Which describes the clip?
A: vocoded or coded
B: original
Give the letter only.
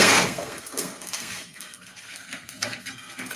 A